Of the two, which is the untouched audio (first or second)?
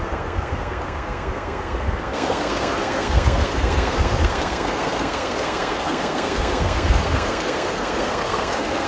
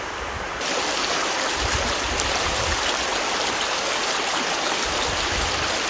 second